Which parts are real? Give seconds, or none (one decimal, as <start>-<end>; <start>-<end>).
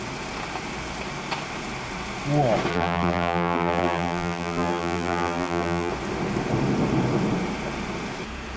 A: 0.0-2.7; 5.9-8.6